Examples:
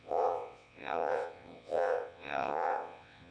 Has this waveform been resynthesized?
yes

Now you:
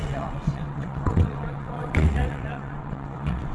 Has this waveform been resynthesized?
yes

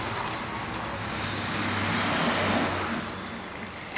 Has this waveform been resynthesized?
no